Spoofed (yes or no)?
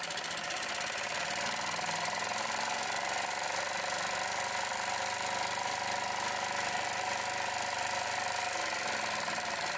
yes